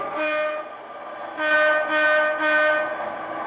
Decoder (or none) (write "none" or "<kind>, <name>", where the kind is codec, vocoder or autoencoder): none